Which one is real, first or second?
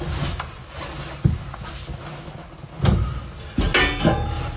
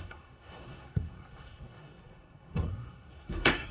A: first